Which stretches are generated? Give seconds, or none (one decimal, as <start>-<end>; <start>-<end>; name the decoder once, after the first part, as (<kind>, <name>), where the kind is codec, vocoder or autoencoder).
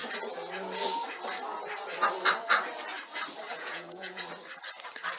3.5-4.2 (vocoder, Vocos)